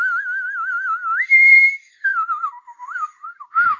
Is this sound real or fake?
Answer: fake